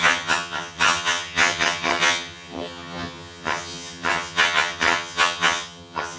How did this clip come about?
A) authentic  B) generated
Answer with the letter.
B